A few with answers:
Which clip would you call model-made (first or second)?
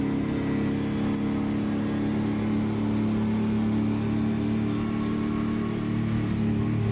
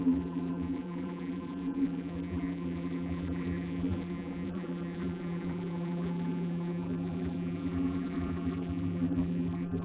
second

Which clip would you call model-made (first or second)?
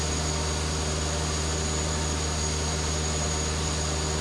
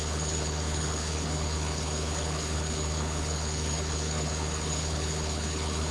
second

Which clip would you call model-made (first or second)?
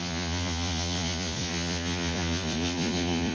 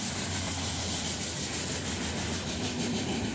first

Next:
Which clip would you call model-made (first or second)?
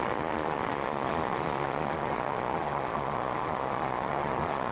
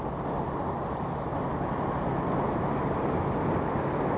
first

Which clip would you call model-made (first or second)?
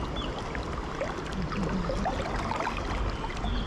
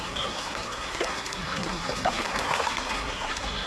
second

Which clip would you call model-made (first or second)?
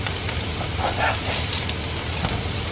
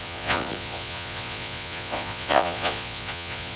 second